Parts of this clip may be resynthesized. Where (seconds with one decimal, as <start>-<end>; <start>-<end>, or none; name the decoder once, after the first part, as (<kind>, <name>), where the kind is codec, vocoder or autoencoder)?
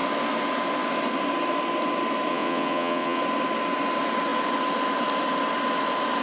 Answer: 2.3-3.2 (vocoder, WaveNeXt)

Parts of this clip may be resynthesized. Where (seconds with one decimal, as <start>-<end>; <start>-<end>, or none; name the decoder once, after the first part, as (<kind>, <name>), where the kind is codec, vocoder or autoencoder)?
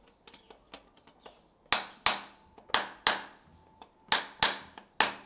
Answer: none